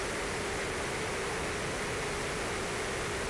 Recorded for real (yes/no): yes